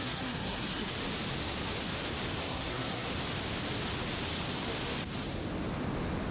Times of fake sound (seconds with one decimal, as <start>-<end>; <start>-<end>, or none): 0.0-0.9; 2.4-3.1